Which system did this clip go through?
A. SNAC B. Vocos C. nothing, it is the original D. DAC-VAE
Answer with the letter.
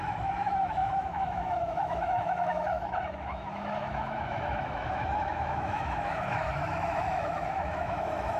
D